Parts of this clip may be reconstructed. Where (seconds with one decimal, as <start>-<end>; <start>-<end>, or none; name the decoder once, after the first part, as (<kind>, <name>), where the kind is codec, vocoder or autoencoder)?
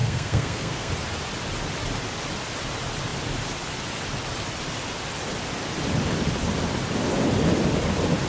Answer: 0.0-0.9 (codec, SNAC)